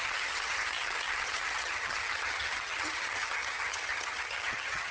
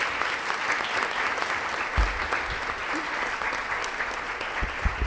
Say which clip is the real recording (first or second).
second